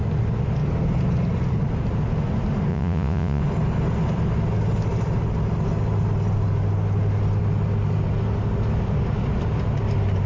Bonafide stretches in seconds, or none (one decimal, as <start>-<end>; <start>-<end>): 0.0-2.7; 3.4-10.3